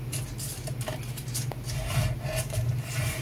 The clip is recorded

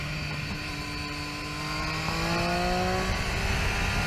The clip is recorded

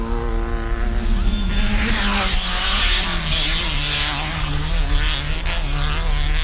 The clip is recorded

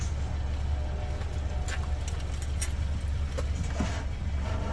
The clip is recorded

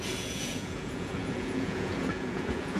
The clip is remade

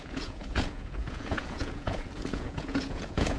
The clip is remade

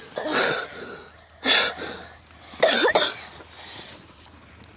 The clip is recorded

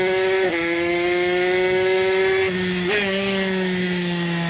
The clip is remade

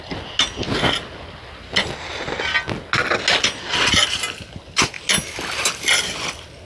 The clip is recorded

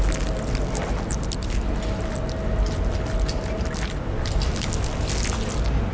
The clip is recorded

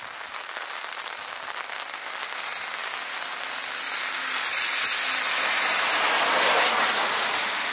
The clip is recorded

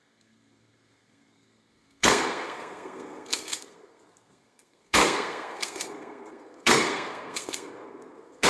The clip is remade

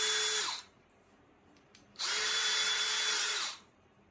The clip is remade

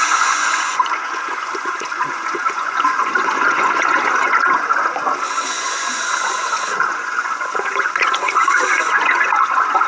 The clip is remade